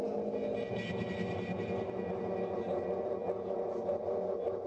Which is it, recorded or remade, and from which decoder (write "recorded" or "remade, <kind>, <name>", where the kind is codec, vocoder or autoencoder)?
recorded